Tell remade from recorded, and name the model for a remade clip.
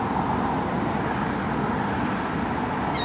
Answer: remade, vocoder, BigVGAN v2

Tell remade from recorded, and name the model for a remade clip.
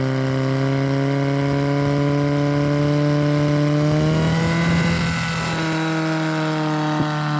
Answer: recorded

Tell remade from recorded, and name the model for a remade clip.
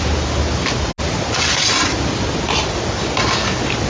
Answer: recorded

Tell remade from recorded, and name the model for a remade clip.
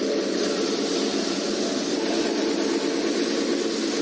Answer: recorded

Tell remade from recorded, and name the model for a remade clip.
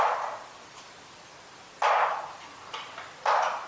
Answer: recorded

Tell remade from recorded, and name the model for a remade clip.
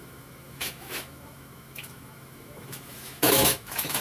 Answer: remade, autoencoder, DAC-VAE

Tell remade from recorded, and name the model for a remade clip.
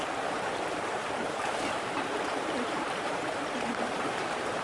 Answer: remade, vocoder, BigVGAN v2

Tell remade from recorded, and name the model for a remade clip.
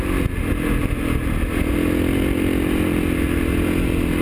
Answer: recorded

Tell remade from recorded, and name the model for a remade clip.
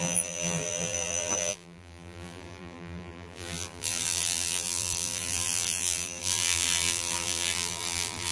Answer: remade, vocoder, BigVGAN v2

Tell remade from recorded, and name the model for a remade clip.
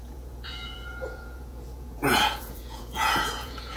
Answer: remade, vocoder, Vocos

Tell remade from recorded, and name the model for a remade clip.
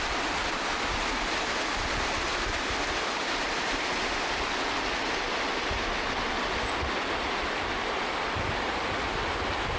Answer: recorded